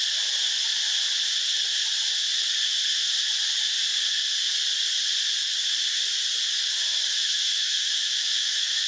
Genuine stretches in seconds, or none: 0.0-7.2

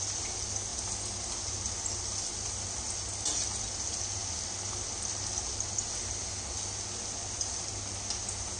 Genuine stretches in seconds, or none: 0.0-8.6

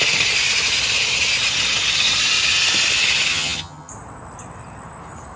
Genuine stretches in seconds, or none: 0.0-3.3; 3.9-5.4

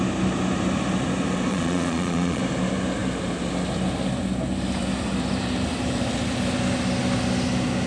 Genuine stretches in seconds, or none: 0.0-1.5; 2.4-7.9

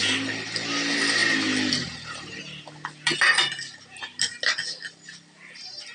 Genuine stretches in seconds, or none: 1.2-4.7

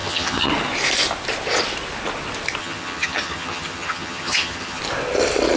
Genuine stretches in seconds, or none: 0.5-2.6; 4.8-5.6

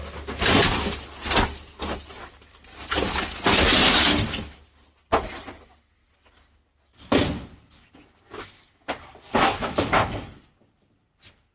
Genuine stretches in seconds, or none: 0.0-11.5